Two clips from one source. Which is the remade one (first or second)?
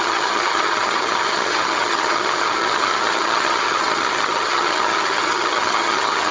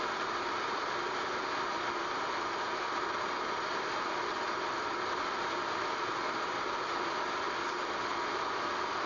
first